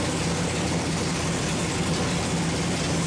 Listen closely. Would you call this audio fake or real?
real